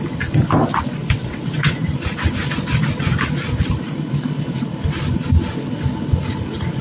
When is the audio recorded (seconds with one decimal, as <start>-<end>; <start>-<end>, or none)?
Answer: 0.0-1.0; 1.8-6.8